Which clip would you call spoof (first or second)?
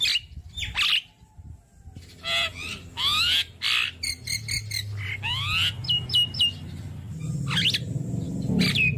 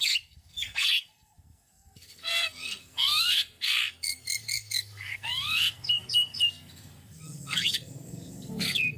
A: second